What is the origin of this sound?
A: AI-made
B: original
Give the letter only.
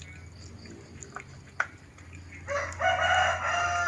B